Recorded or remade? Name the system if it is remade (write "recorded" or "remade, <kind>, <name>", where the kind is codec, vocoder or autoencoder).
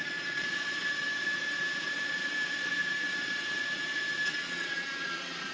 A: remade, vocoder, Vocos